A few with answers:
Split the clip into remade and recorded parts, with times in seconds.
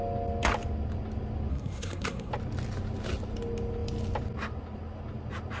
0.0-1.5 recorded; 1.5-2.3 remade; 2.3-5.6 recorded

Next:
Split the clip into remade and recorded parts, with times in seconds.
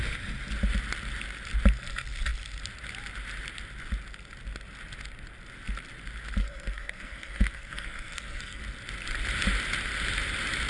0.0-6.4 recorded; 6.4-8.6 remade; 8.6-10.7 recorded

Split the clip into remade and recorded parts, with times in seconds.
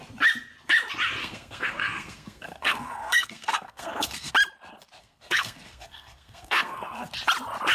0.0-1.2 recorded; 1.2-4.3 remade; 4.3-5.0 recorded; 5.0-7.1 remade; 7.1-7.7 recorded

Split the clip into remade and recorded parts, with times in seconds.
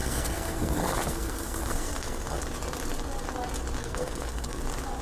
0.0-2.4 remade; 2.4-3.8 recorded; 3.8-4.6 remade; 4.6-5.0 recorded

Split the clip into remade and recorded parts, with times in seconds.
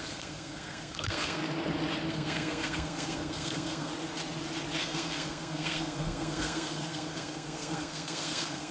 0.0-1.4 remade; 1.4-2.1 recorded; 2.1-3.9 remade; 3.9-4.8 recorded; 4.8-8.7 remade